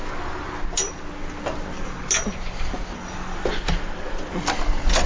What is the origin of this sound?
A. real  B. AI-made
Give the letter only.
A